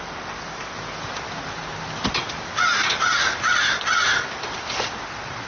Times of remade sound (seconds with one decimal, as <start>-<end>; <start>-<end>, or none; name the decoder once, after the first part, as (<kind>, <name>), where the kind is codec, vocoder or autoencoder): none